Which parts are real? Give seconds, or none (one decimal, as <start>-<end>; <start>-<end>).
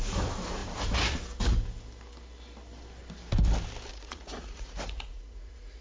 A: 0.0-3.9